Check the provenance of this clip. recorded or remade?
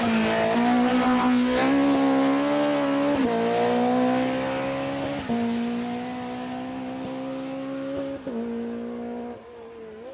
recorded